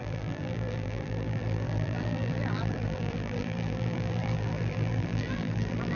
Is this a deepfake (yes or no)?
yes